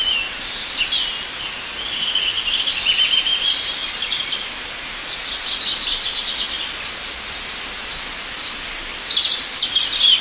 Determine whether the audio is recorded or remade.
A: recorded